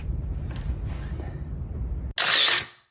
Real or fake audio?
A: real